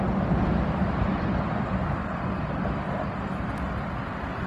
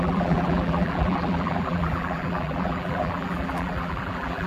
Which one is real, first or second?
first